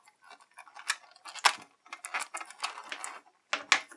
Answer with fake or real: real